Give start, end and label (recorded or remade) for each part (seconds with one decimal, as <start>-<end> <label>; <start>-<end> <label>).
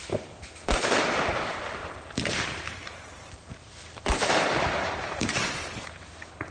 0.0-1.8 recorded; 1.8-5.7 remade; 5.7-6.5 recorded